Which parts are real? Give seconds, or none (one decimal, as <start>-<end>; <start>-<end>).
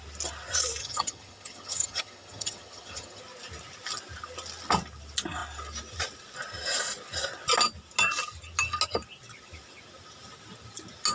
0.0-0.8; 3.2-11.1